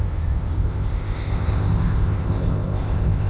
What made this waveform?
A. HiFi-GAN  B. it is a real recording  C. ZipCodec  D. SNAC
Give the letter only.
C